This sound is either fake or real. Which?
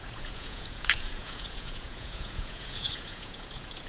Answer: fake